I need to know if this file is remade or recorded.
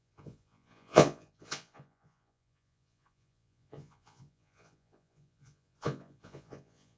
remade